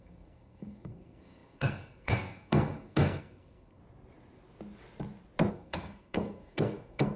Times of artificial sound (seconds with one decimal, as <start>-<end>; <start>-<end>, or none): 0.0-3.8; 5.5-7.2